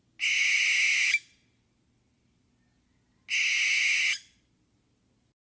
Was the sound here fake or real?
real